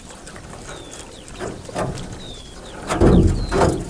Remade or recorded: recorded